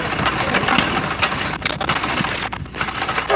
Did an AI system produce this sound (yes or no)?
no